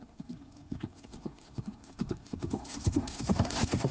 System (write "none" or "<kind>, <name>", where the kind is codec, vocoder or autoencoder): codec, SNAC